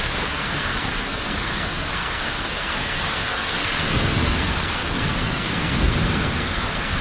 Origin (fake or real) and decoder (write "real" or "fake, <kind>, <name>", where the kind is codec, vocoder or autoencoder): fake, codec, SNAC